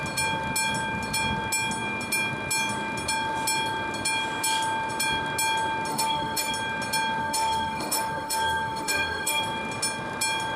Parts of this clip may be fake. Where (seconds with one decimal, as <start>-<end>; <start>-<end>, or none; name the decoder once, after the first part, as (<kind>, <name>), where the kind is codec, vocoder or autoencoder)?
5.9-6.5 (autoencoder, DAC-VAE); 7.2-9.4